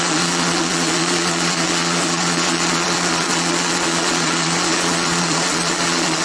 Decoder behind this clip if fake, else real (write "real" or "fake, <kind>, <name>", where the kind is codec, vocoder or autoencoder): fake, vocoder, Vocos